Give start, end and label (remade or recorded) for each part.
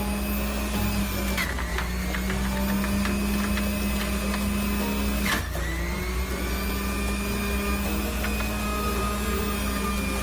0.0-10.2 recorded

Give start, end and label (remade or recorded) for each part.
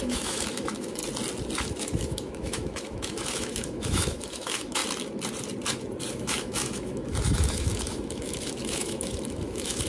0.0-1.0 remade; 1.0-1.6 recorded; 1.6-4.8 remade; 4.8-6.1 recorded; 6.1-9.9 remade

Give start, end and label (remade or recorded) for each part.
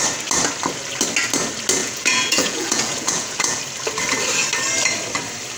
0.0-1.8 recorded; 1.8-3.6 remade; 3.6-5.6 recorded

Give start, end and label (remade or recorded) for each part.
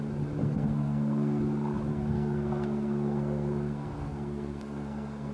0.0-0.4 recorded; 0.4-1.4 remade; 1.4-1.9 recorded; 1.9-5.3 remade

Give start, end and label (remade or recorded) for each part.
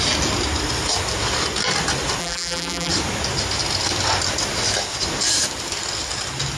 0.0-2.2 recorded; 2.2-2.9 remade; 2.9-6.6 recorded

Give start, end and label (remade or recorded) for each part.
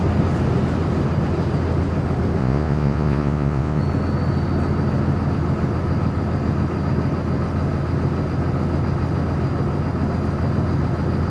0.0-2.4 recorded; 2.4-3.8 remade; 3.8-11.3 recorded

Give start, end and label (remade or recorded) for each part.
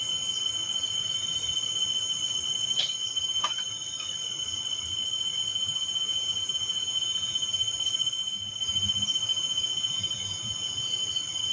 0.0-5.5 recorded; 5.5-7.5 remade; 7.5-9.3 recorded; 9.3-10.9 remade; 10.9-11.5 recorded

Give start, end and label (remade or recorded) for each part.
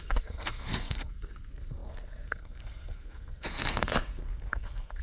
0.0-5.0 remade